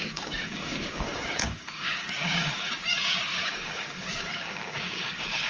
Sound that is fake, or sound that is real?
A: fake